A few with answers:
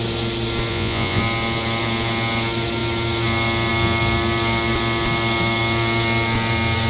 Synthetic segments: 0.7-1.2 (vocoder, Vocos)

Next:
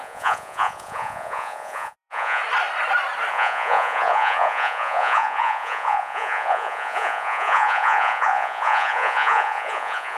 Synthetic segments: 0.0-2.4 (vocoder, Vocos); 3.3-10.2

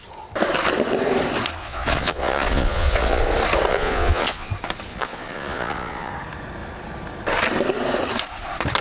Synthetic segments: 1.6-3.2 (vocoder, Vocos); 3.7-4.5; 4.9-6.1

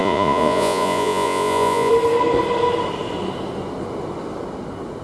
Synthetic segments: 0.0-1.9 (vocoder, Vocos)

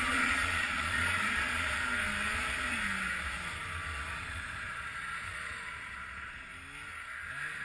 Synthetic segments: 0.0-1.7 (vocoder, Vocos); 4.1-6.5

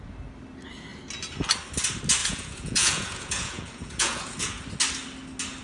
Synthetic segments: 2.2-4.7 (vocoder, Vocos)

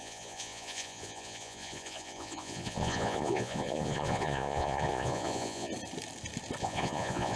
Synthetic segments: 0.0-5.7 (vocoder, Vocos); 6.6-7.4

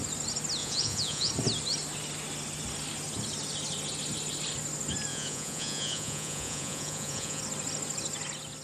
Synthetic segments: 0.6-1.3 (vocoder, Vocos); 5.1-7.4